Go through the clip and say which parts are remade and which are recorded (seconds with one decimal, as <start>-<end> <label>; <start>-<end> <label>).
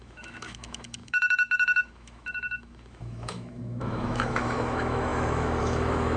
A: 0.0-6.2 remade